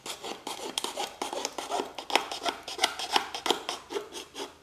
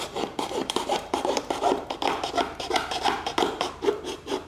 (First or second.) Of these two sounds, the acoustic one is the first